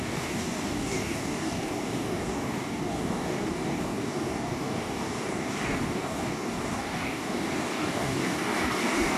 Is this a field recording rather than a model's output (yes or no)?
no